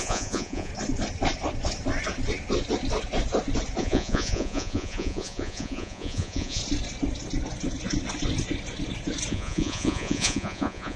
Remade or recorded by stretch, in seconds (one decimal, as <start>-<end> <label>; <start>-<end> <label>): 0.0-0.7 remade; 0.7-3.8 recorded; 3.8-6.6 remade; 6.6-9.3 recorded; 9.3-11.0 remade